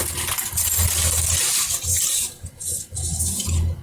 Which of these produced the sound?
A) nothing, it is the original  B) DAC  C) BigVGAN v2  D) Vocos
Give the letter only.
A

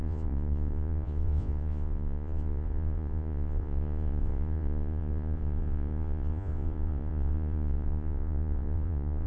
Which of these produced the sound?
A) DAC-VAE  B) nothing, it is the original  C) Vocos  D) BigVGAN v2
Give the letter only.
C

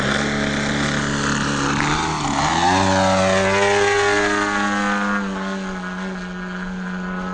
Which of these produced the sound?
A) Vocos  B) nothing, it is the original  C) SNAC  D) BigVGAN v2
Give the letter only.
B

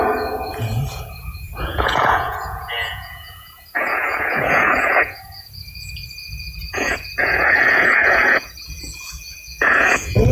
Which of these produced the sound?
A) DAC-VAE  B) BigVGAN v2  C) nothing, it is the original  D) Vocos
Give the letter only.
D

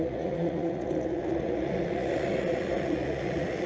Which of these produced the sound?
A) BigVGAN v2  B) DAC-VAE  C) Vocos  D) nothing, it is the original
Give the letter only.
C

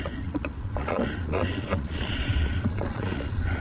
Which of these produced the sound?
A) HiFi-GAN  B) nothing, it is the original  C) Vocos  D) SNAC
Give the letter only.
C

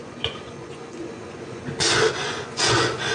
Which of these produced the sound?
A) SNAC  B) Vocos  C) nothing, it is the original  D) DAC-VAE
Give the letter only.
B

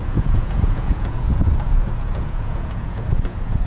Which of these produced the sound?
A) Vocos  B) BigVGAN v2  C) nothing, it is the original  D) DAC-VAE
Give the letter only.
A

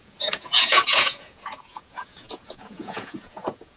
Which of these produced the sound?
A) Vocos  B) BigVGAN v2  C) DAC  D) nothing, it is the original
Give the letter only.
A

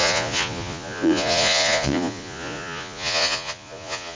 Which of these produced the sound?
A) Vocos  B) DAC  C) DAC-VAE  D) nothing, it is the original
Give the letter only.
A